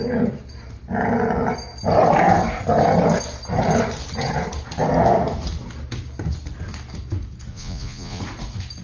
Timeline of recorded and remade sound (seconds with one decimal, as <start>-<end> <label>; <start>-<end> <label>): 0.0-7.5 recorded; 7.5-8.2 remade; 8.2-8.8 recorded